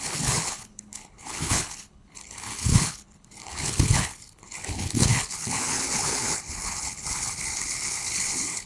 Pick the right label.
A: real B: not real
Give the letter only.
B